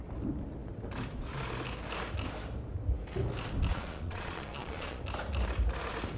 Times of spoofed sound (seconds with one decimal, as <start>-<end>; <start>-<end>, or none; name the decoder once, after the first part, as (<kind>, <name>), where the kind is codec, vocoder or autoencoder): 3.7-5.0 (vocoder, Vocos)